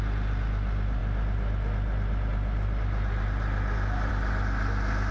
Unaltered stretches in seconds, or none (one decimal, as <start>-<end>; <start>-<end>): 0.0-5.1